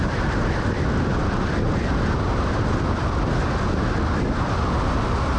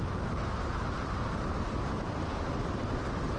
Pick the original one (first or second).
first